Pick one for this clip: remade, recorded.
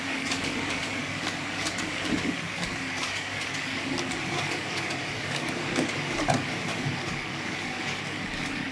remade